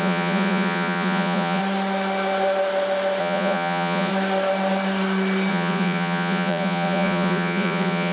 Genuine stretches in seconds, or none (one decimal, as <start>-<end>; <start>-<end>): 1.6-3.2; 4.1-5.5